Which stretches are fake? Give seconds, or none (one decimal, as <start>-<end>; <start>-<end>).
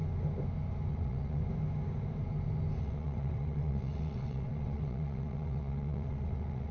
0.9-1.4; 2.8-6.7